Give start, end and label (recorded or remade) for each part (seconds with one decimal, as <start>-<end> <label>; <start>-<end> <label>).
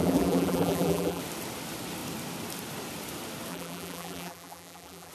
0.0-1.2 remade; 1.2-3.5 recorded; 3.5-5.1 remade